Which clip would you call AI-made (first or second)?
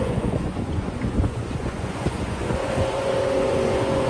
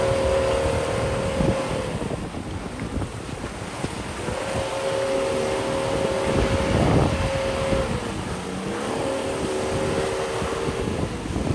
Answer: first